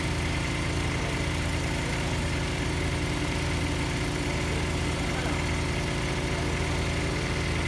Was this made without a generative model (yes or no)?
yes